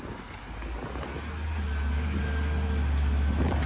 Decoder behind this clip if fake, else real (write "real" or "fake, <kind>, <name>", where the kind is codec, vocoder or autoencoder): real